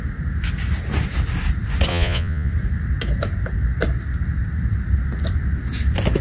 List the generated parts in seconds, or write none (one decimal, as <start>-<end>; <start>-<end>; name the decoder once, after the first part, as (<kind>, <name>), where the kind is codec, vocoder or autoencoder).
1.9-2.5 (vocoder, Vocos)